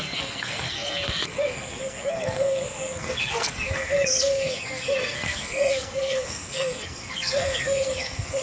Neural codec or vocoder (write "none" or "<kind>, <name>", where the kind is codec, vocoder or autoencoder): codec, SNAC